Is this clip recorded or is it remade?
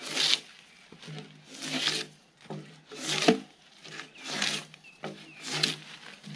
recorded